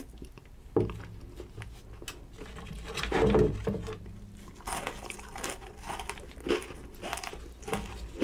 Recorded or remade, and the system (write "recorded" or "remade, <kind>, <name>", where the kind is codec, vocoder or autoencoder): recorded